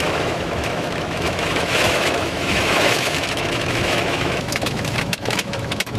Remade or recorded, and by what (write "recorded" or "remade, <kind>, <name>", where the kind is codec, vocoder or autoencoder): remade, autoencoder, DAC-VAE